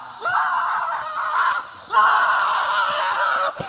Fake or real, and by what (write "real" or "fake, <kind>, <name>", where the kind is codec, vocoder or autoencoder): real